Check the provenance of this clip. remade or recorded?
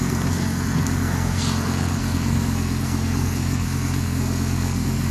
remade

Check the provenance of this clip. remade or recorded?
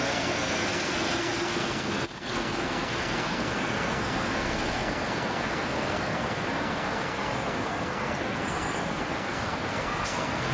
remade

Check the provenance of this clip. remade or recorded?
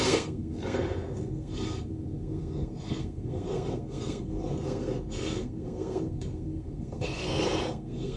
remade